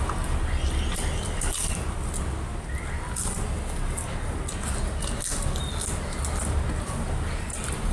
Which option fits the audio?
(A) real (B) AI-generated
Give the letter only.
A